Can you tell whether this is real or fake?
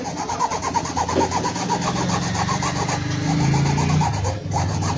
real